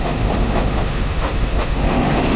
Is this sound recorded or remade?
remade